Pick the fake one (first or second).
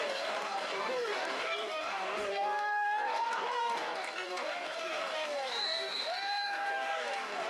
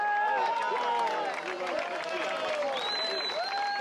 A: first